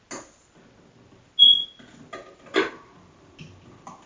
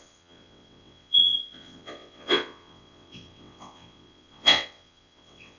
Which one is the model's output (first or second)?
second